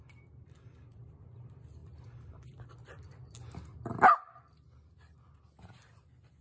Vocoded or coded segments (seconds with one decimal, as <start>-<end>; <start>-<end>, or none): 0.0-1.8; 5.6-6.4